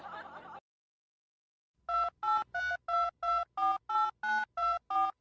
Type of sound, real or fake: real